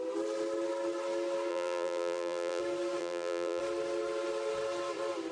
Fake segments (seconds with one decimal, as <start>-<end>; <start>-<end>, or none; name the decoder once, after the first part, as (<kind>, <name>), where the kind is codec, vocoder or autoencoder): 1.5-2.6 (vocoder, BigVGAN v2); 3.0-3.6